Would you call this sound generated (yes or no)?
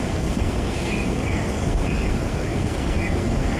yes